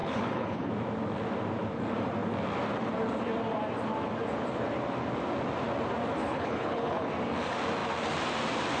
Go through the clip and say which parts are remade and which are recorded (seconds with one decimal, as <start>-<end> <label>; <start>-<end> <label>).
0.0-0.7 remade; 0.7-6.2 recorded; 6.2-7.1 remade; 7.1-8.8 recorded